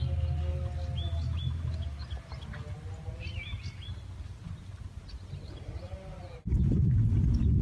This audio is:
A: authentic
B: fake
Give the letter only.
A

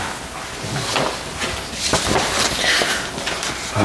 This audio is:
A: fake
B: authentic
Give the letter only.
B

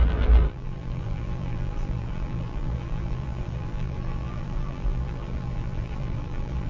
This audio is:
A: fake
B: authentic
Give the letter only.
A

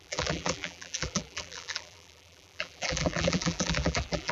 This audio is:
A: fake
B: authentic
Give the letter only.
A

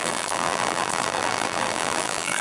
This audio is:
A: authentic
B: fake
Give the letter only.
B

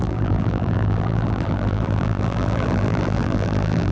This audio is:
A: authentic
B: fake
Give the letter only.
B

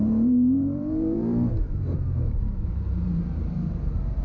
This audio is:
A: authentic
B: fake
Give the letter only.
B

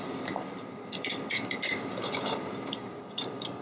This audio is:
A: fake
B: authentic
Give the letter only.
A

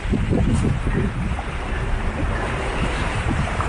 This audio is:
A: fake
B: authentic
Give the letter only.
A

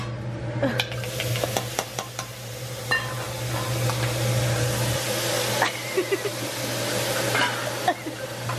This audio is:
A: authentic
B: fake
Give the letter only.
A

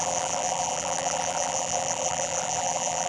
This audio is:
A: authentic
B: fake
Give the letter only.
B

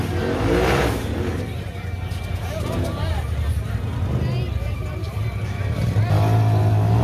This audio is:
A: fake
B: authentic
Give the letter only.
B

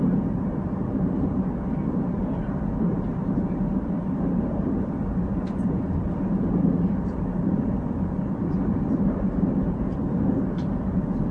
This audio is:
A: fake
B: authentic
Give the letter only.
A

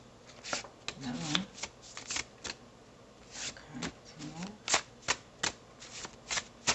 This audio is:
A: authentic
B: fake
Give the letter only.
A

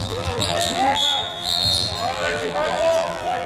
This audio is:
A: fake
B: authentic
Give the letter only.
A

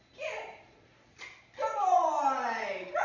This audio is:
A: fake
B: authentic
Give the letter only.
B